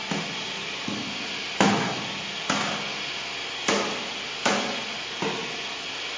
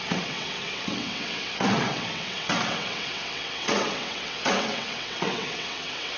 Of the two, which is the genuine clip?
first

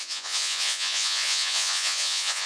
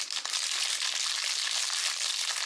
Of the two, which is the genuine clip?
second